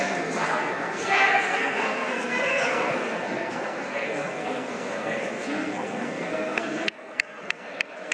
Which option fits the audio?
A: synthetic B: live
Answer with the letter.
A